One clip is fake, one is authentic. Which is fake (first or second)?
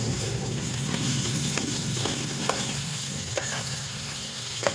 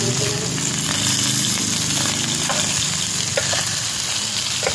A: first